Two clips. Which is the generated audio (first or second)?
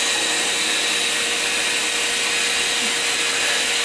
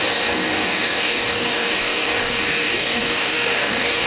second